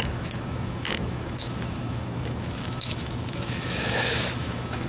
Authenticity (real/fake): fake